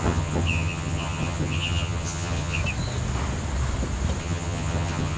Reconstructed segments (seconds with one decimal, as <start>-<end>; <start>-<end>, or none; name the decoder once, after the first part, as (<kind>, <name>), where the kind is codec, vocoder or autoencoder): 0.0-2.6 (vocoder, HiFi-GAN); 4.2-5.2